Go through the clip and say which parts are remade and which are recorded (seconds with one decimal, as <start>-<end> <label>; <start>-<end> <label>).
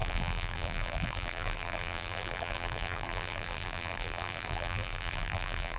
0.0-5.8 remade